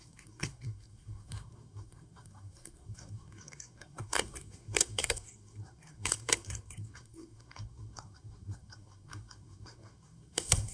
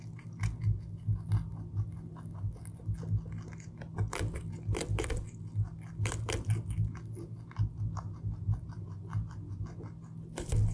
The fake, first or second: first